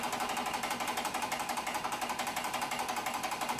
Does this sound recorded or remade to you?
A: recorded